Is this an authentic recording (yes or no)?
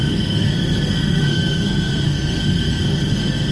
no